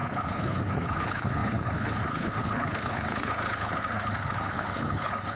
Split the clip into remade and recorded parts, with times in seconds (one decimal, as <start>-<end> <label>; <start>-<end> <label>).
0.0-5.4 remade